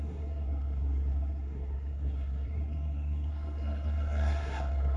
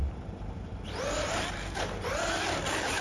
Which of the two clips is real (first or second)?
second